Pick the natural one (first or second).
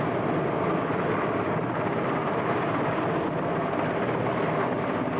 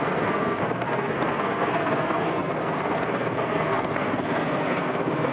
first